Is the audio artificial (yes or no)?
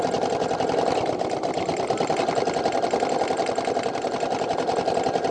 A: no